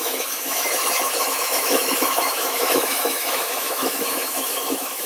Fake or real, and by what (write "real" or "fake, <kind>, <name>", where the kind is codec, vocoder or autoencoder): fake, autoencoder, DAC-VAE